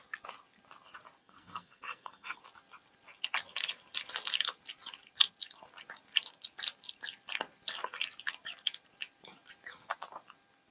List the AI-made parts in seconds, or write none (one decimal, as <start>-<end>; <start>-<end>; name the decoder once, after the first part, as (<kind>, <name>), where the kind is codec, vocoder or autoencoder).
1.2-2.4 (codec, SNAC)